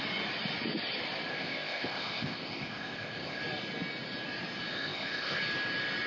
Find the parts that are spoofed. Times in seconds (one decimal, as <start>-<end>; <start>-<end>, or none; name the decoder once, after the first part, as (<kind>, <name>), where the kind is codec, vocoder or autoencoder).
1.3-3.4 (codec, ZipCodec); 4.7-5.4